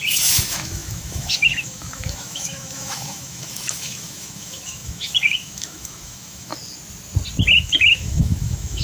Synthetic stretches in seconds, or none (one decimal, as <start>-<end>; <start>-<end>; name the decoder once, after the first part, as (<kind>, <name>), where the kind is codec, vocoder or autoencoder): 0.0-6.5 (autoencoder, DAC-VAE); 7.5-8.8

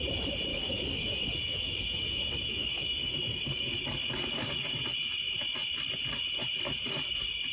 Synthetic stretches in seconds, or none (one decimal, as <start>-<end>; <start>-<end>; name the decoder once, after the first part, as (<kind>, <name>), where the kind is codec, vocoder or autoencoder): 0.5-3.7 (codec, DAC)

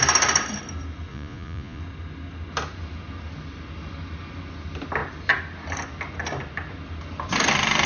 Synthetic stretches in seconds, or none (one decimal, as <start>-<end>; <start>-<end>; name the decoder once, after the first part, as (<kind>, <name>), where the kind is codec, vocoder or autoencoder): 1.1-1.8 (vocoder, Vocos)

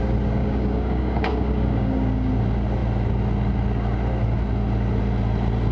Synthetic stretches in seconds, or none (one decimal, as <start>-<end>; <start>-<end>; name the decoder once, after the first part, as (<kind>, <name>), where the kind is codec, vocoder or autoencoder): 0.4-2.3 (codec, DAC)